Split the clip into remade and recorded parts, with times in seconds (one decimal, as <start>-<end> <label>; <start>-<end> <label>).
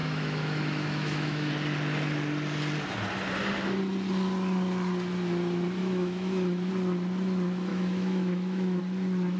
0.0-1.5 remade; 1.5-5.8 recorded; 5.8-6.7 remade; 6.7-7.7 recorded; 7.7-8.8 remade; 8.8-9.4 recorded